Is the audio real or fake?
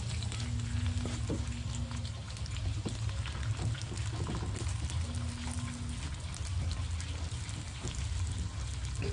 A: real